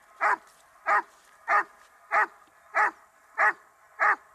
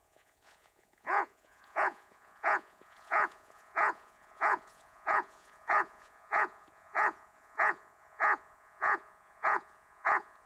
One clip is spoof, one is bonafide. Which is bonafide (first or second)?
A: first